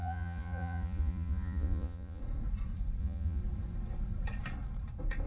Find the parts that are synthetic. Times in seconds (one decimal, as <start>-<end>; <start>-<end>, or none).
0.0-2.2; 3.0-3.4